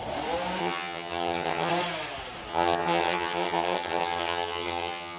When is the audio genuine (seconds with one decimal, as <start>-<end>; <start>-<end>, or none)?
0.0-0.6; 1.7-2.5

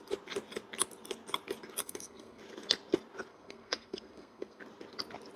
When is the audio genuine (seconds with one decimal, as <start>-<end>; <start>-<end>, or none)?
0.0-1.8; 2.4-3.3; 4.6-5.4

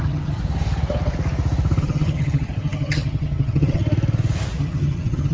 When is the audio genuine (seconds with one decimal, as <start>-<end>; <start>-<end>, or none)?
0.4-1.8; 3.8-4.6

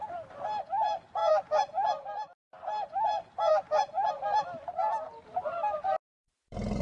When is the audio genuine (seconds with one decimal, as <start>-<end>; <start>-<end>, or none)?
0.0-6.8

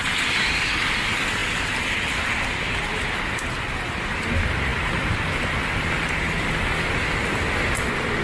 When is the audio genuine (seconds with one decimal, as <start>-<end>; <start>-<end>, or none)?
0.0-8.2